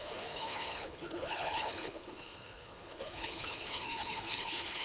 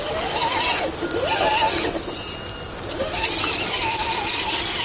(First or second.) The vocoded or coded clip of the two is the first